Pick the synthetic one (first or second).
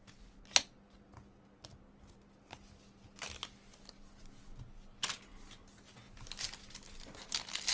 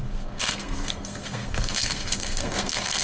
second